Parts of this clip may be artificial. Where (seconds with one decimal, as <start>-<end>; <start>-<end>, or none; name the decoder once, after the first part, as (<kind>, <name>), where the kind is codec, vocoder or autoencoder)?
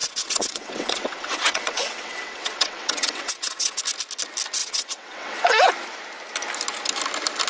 0.0-3.8 (vocoder, WaveNeXt); 4.6-5.7